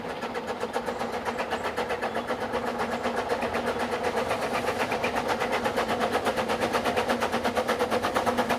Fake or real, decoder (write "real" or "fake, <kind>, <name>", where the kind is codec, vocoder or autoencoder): real